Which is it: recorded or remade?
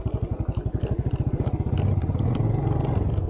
recorded